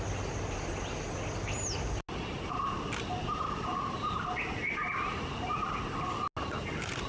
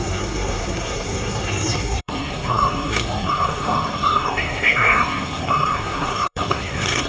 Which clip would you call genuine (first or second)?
first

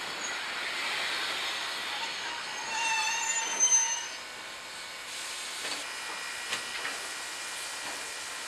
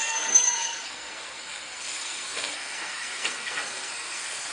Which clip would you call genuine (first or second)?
first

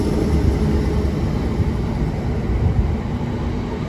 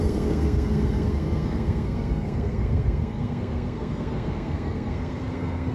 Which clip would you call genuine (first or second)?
first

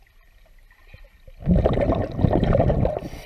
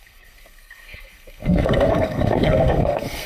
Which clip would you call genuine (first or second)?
first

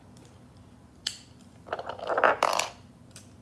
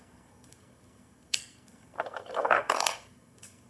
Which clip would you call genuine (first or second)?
first